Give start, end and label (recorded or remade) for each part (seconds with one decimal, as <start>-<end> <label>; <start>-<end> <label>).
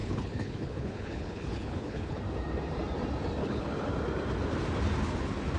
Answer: 0.0-2.2 remade; 2.2-3.4 recorded; 3.4-3.9 remade; 3.9-5.6 recorded